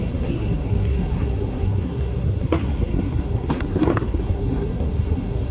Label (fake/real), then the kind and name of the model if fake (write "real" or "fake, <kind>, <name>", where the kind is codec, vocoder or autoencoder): fake, codec, SNAC